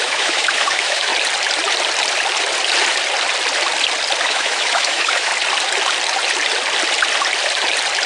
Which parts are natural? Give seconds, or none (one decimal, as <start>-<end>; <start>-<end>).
1.1-4.2; 5.3-8.1